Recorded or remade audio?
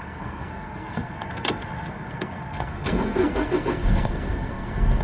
remade